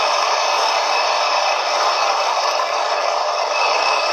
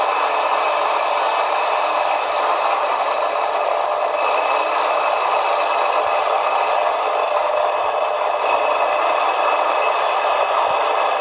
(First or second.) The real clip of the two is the second